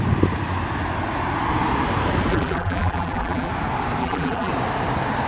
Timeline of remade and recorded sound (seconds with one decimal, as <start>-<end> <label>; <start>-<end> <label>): 0.0-2.3 recorded; 2.3-3.5 remade; 3.5-4.0 recorded; 4.0-4.5 remade; 4.5-5.3 recorded